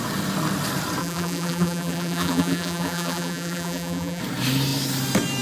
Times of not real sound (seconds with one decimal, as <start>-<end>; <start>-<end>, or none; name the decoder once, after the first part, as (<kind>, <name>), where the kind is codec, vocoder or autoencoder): 1.0-4.2 (vocoder, BigVGAN v2)